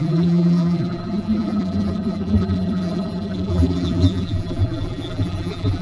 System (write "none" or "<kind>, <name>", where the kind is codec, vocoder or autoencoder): vocoder, BigVGAN v2